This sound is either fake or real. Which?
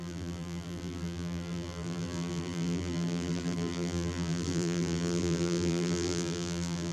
fake